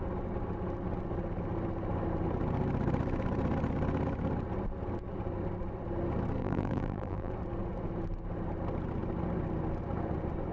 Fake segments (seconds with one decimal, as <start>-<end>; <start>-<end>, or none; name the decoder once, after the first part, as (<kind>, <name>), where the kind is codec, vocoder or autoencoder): 6.4-7.3 (vocoder, BigVGAN v2)